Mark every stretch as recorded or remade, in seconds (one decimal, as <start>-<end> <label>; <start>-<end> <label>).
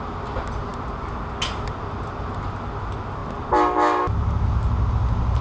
0.0-5.4 recorded